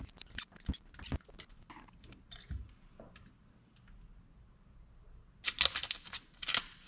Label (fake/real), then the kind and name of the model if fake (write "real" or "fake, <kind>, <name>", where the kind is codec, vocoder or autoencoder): real